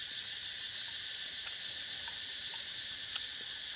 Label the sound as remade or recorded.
recorded